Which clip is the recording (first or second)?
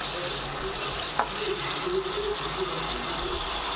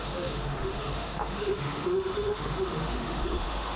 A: first